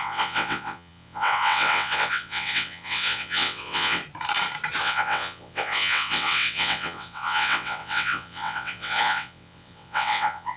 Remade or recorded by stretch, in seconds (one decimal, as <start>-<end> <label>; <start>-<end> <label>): 0.0-4.0 remade; 4.0-4.8 recorded; 4.8-10.6 remade